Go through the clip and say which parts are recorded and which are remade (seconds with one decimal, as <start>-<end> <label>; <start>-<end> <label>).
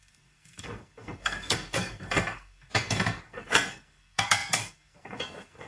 0.0-5.7 remade